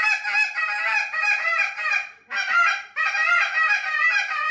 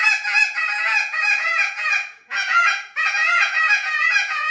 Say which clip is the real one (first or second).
first